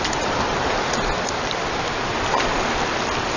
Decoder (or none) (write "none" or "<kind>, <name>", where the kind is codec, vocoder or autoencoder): none